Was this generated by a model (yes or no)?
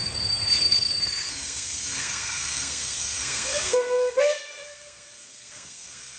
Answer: yes